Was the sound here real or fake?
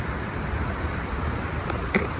fake